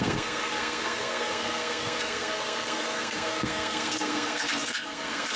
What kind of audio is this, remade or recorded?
remade